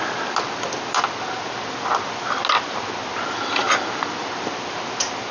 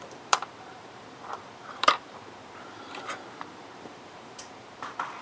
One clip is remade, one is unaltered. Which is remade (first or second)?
second